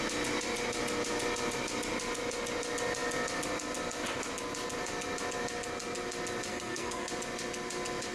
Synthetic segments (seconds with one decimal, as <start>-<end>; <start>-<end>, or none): 6.5-7.1